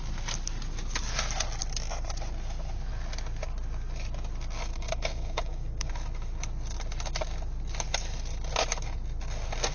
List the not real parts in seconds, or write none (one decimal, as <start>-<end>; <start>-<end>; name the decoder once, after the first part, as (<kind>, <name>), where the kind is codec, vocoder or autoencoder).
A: 4.7-5.9 (codec, DAC)